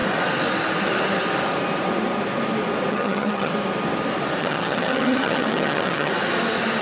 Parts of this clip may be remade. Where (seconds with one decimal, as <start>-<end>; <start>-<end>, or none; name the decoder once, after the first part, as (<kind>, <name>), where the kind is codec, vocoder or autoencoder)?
2.9-3.5 (vocoder, HiFi-GAN); 4.4-6.1